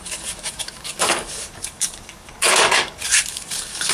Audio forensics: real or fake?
fake